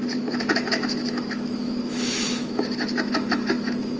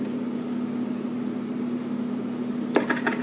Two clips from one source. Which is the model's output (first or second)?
first